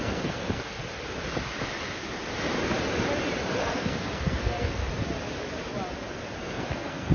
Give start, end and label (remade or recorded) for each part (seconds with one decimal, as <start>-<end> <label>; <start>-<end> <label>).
0.0-0.8 remade; 0.8-3.6 recorded; 3.6-4.8 remade; 4.8-6.4 recorded; 6.4-7.1 remade